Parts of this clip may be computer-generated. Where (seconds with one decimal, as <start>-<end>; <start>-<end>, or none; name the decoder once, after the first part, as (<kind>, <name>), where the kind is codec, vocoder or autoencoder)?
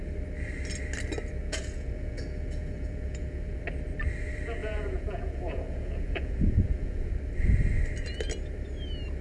1.4-3.6 (vocoder, Vocos); 4.6-7.1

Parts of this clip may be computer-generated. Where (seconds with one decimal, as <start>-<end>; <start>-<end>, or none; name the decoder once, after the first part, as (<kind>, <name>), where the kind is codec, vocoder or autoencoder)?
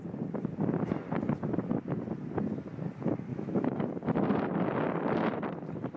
3.3-3.8 (autoencoder, DAC-VAE)